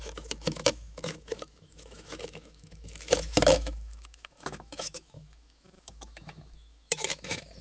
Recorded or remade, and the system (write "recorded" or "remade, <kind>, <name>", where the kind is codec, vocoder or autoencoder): remade, autoencoder, DAC-VAE